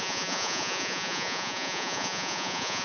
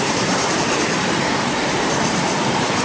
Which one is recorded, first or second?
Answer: second